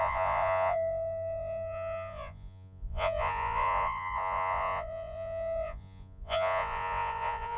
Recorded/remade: remade